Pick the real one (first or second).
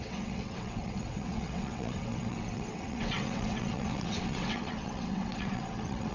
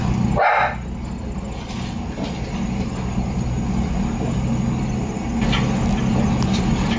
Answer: second